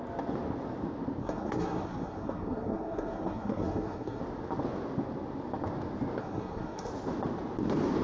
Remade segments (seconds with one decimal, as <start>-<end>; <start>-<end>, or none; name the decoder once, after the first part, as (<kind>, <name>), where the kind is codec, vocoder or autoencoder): 1.2-4.2 (codec, SNAC); 6.2-6.9